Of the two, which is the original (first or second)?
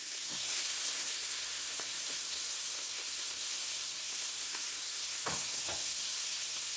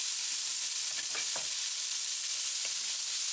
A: second